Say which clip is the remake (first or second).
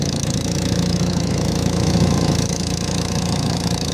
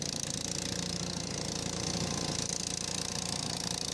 first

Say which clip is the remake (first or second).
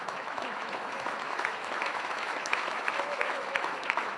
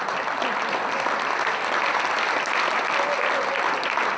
first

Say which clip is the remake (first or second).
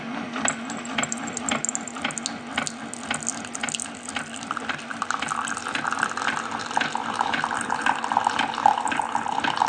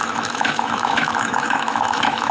second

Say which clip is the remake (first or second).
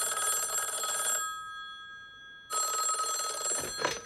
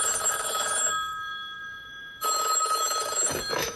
second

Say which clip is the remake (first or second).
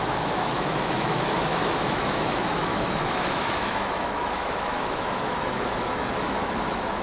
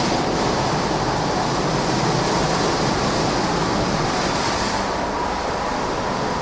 first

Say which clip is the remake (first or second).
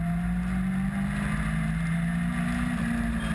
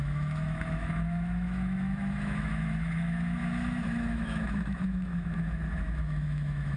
second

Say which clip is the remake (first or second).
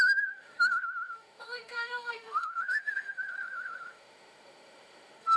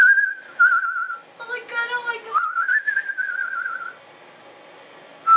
first